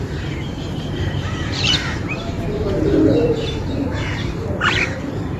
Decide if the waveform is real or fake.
fake